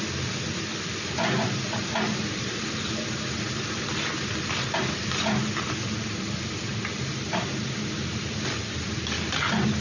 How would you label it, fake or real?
real